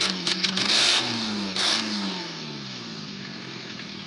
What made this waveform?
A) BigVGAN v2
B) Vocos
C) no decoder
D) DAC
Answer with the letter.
D